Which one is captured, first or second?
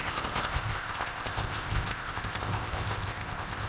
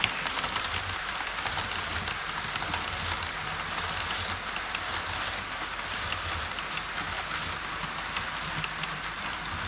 second